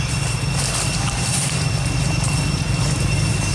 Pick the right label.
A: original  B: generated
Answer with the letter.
A